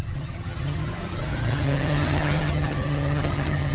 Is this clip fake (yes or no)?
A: yes